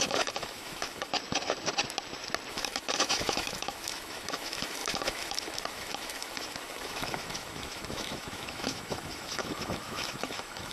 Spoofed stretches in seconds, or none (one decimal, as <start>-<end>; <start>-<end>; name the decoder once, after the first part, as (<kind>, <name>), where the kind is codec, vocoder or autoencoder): 0.0-1.1 (autoencoder, DAC-VAE); 2.5-10.7

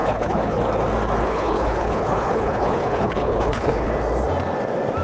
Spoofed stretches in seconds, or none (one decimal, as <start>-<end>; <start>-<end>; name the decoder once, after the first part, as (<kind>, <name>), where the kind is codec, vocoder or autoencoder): 0.0-0.6 (codec, HILCodec); 1.2-3.9

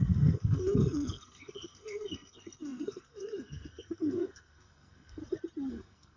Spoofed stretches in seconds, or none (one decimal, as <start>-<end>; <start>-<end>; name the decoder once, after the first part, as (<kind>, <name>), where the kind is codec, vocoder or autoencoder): 0.0-5.2 (codec, SNAC); 5.7-6.2

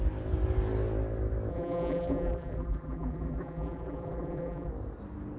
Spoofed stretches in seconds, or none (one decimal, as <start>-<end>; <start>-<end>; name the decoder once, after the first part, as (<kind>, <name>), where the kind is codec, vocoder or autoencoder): 1.5-4.7 (vocoder, BigVGAN v2)

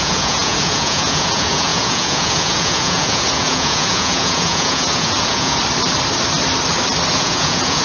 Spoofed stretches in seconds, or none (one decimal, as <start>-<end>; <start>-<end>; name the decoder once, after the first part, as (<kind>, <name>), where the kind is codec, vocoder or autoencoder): 0.0-5.6 (vocoder, Vocos); 7.1-7.8